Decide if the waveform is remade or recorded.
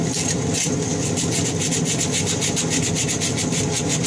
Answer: recorded